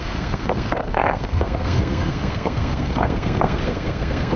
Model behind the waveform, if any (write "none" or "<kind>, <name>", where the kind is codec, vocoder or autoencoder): codec, SNAC